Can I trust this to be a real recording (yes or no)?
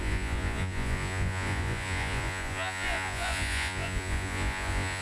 no